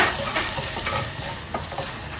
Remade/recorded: remade